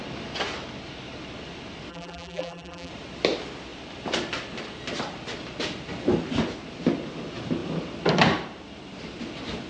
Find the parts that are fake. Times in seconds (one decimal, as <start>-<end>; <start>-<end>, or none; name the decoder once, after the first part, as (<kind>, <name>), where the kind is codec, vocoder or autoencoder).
1.9-2.9 (vocoder, BigVGAN v2)